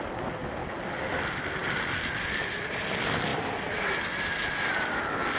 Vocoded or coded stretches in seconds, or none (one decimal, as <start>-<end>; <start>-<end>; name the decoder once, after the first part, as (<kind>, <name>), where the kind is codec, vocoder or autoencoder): 3.3-5.4 (vocoder, BigVGAN v2)